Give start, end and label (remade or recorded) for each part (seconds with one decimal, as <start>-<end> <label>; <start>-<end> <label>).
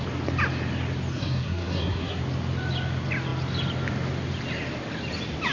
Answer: 0.0-1.1 recorded; 1.1-2.2 remade; 2.2-5.5 recorded